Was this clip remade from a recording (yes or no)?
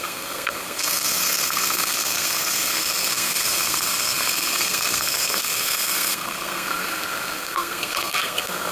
yes